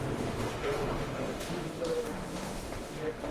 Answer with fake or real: fake